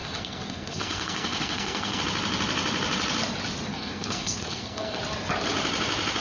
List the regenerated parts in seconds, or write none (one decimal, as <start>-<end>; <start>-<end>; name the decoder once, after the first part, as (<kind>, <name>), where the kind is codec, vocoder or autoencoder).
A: 0.0-2.0 (codec, SNAC); 3.7-5.0